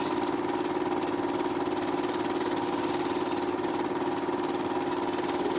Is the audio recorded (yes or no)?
yes